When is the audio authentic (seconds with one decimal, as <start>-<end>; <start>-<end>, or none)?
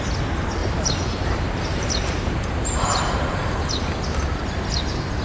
0.0-0.6; 3.7-5.2